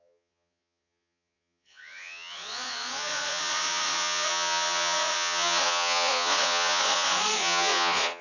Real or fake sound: fake